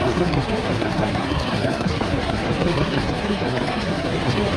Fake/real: fake